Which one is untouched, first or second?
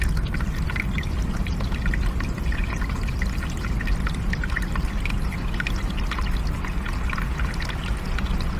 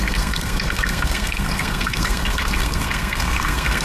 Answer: first